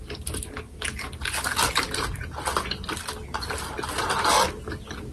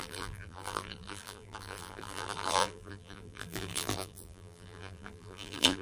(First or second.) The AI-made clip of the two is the second